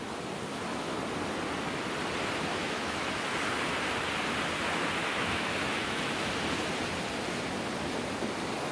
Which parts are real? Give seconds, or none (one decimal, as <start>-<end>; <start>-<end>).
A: 0.0-0.5; 1.0-2.5; 3.0-5.0; 6.3-8.7